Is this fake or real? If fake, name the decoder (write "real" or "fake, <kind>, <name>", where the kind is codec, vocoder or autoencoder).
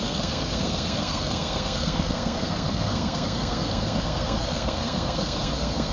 fake, codec, SNAC